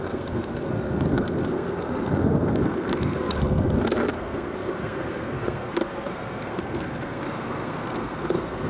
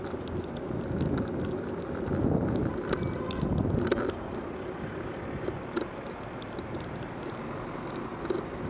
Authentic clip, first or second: second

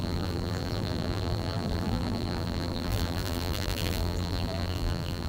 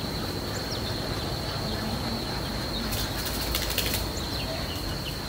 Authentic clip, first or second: second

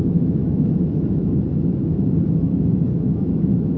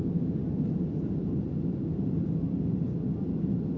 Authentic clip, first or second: second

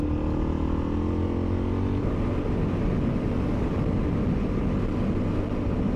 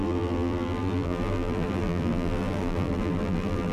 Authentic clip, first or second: first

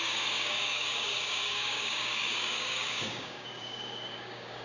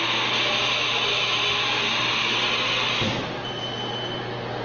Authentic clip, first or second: second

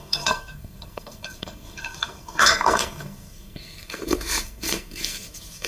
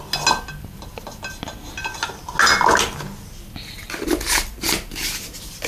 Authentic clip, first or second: second